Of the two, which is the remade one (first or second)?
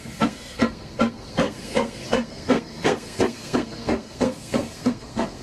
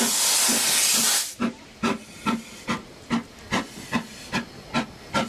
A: first